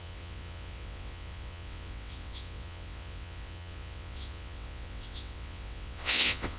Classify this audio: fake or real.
fake